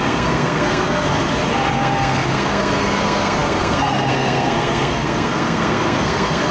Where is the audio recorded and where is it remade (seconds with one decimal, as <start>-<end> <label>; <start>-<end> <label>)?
0.0-1.1 remade; 1.1-1.7 recorded; 1.7-6.5 remade